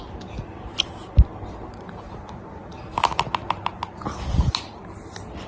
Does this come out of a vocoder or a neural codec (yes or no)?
no